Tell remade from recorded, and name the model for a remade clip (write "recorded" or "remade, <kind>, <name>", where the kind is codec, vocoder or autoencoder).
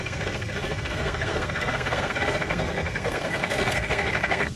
remade, codec, SNAC